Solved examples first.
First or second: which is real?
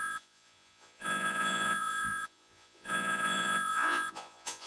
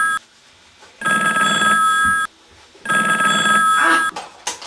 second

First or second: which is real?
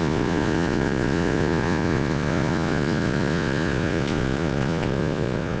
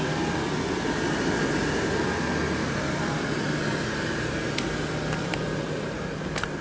second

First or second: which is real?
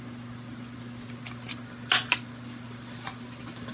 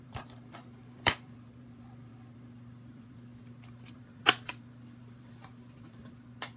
first